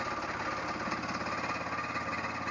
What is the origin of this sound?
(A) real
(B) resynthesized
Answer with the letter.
A